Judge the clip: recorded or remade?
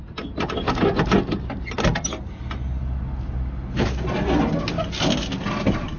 recorded